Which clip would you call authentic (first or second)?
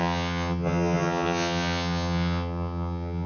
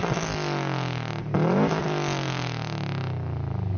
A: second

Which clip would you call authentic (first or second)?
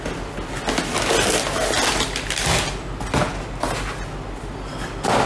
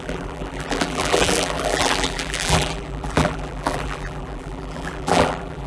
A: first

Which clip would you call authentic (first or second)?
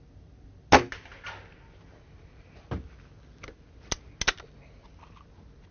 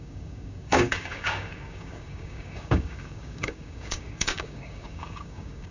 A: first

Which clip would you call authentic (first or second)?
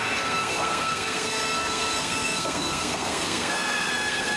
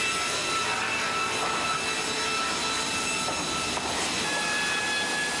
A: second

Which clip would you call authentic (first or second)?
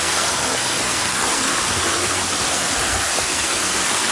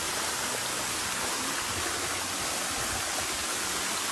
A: second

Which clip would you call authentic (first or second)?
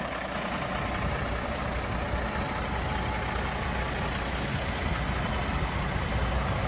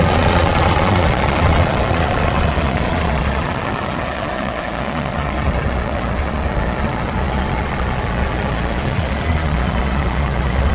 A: first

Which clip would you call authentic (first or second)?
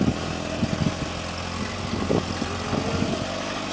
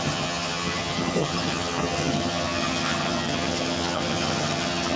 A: first